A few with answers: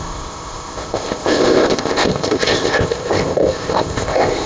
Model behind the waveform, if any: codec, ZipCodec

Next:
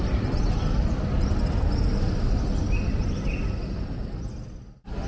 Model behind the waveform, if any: none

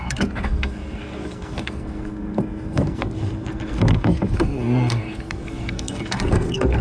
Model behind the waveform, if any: codec, SNAC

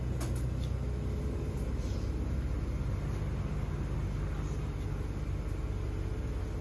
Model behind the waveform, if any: none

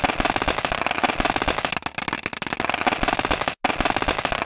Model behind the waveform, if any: none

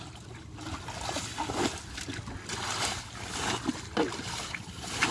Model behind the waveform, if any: none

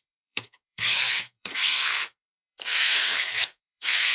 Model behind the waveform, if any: codec, SNAC